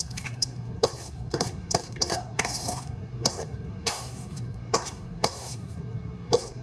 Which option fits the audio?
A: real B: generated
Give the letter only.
B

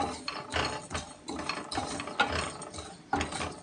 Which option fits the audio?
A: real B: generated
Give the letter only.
A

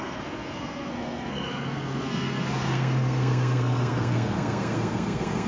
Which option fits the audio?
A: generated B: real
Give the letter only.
A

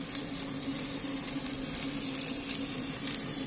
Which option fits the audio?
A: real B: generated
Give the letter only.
A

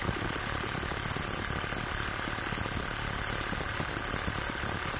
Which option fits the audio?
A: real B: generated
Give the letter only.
A